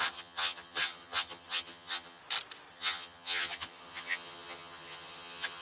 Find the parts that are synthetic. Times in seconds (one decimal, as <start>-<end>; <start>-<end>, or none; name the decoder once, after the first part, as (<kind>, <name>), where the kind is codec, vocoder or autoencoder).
0.0-2.2 (vocoder, HiFi-GAN); 2.7-5.6